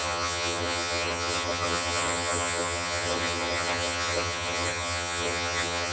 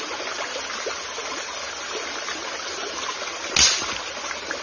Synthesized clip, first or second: first